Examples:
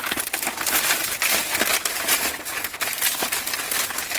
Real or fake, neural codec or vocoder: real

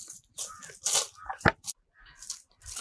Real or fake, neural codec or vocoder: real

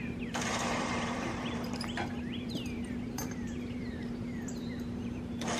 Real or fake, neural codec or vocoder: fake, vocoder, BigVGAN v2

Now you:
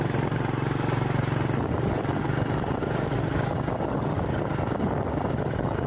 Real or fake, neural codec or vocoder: real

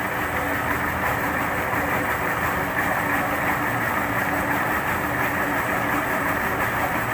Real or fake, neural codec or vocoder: real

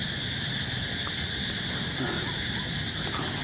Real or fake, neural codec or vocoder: real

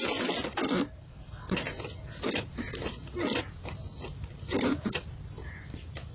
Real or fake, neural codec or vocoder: fake, vocoder, BigVGAN v2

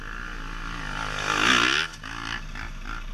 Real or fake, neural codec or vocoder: real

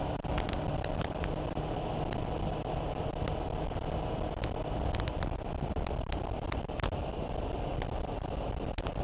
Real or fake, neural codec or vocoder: real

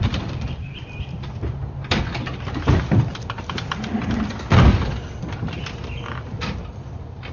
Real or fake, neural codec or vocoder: fake, vocoder, BigVGAN v2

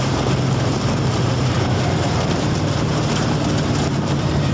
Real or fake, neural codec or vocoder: fake, vocoder, BigVGAN v2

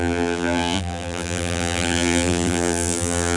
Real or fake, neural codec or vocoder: fake, vocoder, BigVGAN v2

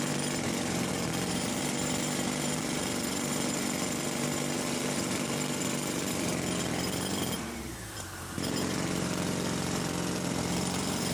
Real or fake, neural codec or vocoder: fake, vocoder, BigVGAN v2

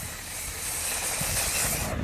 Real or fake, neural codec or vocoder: real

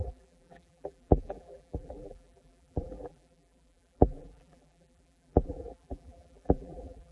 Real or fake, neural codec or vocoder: fake, vocoder, BigVGAN v2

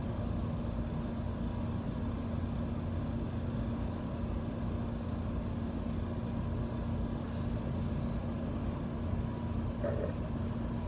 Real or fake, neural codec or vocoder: real